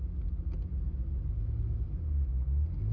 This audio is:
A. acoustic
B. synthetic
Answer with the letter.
A